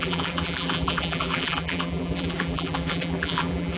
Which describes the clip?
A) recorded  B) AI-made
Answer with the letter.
B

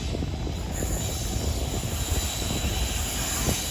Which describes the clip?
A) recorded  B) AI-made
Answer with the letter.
A